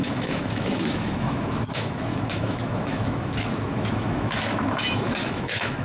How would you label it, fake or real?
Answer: fake